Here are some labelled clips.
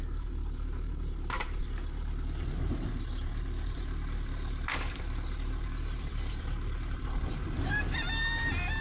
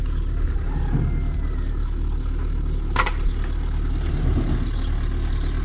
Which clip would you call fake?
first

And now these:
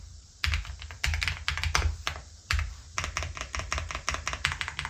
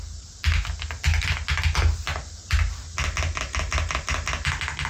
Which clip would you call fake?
first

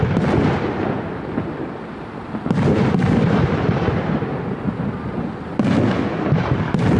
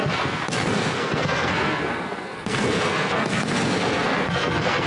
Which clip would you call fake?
second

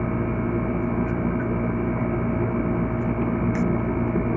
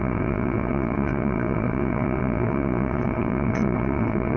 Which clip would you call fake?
second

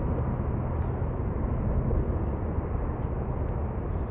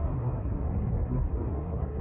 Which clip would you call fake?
second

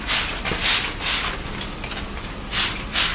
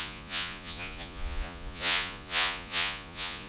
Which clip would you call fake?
second